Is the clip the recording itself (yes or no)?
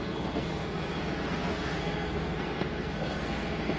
no